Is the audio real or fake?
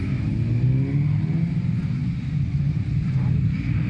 real